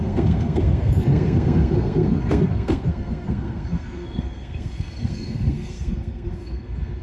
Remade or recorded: remade